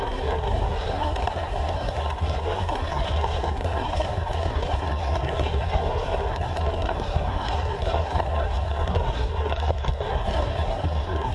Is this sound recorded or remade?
remade